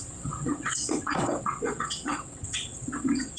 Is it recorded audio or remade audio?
remade